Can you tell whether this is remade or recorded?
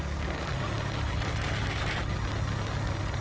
recorded